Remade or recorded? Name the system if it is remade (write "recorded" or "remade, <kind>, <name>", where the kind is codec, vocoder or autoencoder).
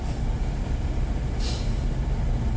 recorded